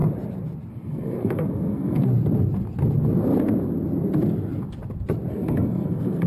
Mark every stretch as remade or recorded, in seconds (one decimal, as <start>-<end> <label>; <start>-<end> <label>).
0.0-0.7 recorded; 0.7-2.1 remade; 2.1-5.3 recorded; 5.3-6.3 remade